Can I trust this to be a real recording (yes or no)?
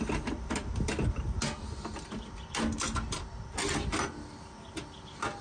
yes